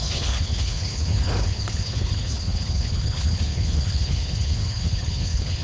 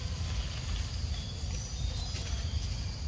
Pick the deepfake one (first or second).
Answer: first